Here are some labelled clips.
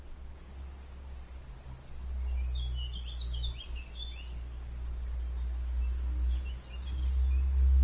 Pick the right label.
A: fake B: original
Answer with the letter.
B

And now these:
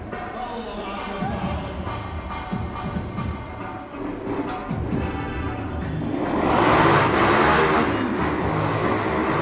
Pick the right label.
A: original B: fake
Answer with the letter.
A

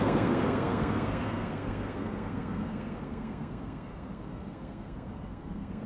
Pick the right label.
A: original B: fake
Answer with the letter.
B